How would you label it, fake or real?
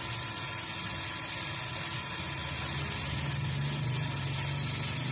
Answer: real